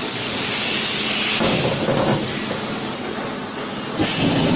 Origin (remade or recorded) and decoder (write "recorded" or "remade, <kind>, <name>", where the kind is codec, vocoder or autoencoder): recorded